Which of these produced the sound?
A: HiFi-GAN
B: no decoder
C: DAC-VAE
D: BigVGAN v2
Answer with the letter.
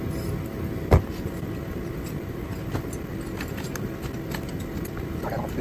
B